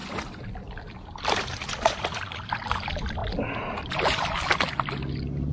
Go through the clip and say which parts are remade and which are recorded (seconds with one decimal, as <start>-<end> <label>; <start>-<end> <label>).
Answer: 0.0-3.2 remade; 3.2-5.5 recorded